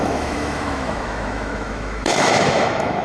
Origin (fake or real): fake